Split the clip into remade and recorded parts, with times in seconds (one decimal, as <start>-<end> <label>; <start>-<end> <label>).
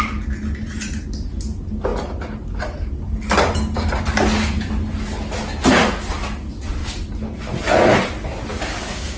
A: 0.0-8.5 recorded; 8.5-9.2 remade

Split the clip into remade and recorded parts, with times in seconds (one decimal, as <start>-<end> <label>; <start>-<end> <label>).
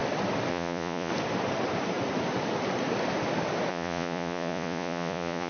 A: 0.0-0.5 recorded; 0.5-1.1 remade; 1.1-3.7 recorded; 3.7-5.5 remade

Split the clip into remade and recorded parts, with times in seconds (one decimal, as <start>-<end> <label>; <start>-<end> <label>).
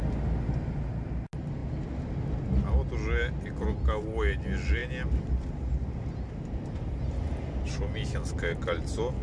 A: 0.0-9.2 recorded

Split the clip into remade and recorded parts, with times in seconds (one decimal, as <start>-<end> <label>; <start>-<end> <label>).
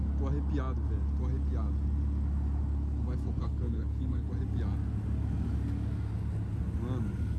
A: 0.0-3.4 recorded; 3.4-4.3 remade; 4.3-7.4 recorded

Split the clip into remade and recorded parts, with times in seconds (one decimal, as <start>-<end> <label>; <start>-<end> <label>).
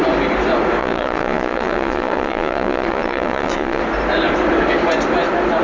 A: 0.0-0.8 recorded; 0.8-3.8 remade; 3.8-5.6 recorded